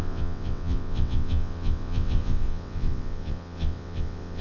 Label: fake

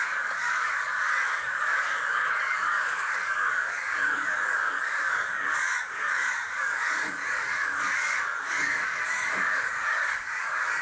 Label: fake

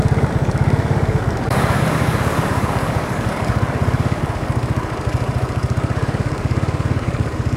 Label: fake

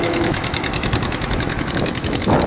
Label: fake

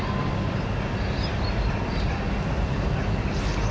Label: real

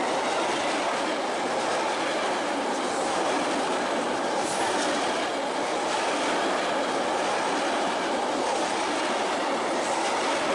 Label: real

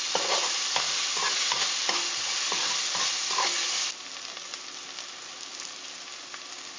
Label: real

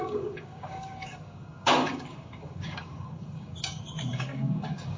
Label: fake